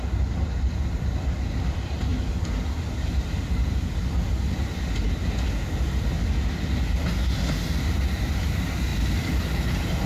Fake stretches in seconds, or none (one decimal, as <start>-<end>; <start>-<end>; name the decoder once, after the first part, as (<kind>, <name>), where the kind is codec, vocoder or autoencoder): none